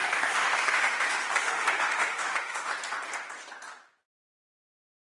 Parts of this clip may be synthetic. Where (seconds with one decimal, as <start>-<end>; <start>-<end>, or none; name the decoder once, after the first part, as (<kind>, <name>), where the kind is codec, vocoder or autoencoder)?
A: 0.0-2.7 (autoencoder, DAC-VAE)